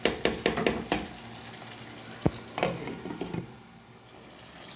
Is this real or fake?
real